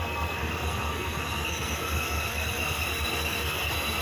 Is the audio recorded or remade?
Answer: remade